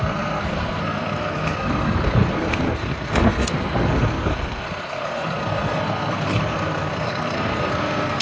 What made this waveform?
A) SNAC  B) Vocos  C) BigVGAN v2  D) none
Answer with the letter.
A